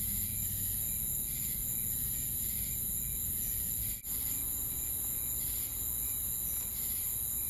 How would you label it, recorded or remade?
recorded